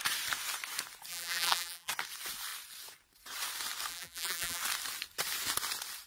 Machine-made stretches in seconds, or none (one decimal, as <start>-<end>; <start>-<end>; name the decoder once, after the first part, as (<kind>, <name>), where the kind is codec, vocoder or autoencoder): 1.1-1.9 (vocoder, BigVGAN v2); 3.9-4.6